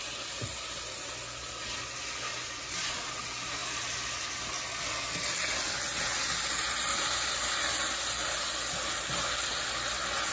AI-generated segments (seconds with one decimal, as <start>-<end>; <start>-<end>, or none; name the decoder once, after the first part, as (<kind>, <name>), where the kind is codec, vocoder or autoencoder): 2.3-3.1 (vocoder, BigVGAN v2); 6.9-7.8